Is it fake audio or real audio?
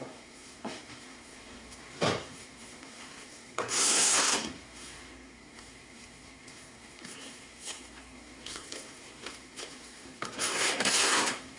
fake